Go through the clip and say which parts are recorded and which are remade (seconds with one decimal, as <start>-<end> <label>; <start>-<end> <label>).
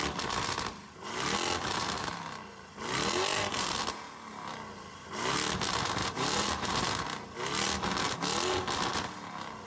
0.0-6.0 recorded; 6.0-6.7 remade; 6.7-9.7 recorded